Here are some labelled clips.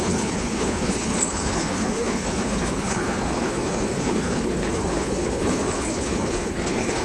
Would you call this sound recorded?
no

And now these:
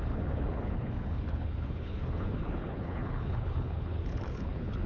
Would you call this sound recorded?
no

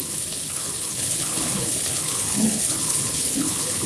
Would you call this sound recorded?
no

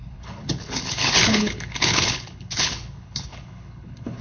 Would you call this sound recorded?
no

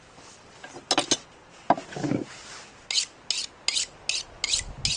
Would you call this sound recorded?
yes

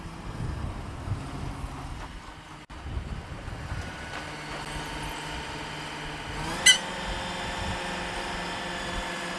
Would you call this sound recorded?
yes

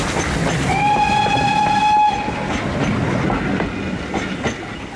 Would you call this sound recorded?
yes